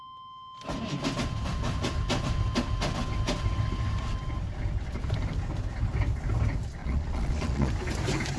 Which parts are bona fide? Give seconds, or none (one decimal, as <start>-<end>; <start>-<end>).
0.0-6.8; 7.7-8.4